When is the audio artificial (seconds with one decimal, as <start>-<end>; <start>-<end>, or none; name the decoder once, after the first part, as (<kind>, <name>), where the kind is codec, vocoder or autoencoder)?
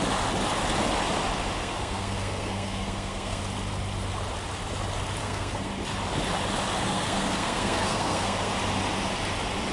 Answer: 1.6-3.4 (codec, SNAC); 5.2-5.7; 6.7-8.5